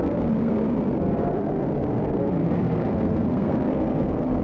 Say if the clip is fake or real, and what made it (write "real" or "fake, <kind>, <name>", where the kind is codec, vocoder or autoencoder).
fake, codec, SNAC